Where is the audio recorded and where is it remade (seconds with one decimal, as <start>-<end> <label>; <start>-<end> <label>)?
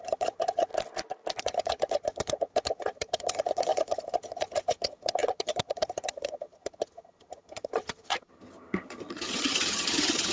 0.0-0.7 remade; 0.7-1.4 recorded; 1.4-10.3 remade